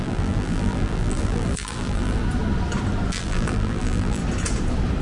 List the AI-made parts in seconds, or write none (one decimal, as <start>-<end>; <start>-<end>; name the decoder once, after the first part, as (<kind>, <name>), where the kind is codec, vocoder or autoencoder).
0.0-2.2 (vocoder, BigVGAN v2); 3.1-4.2